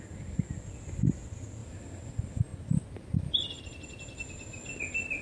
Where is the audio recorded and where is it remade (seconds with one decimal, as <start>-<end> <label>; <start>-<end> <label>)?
0.0-5.2 recorded